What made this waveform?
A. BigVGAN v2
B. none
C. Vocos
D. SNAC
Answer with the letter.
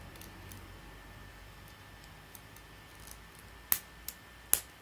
B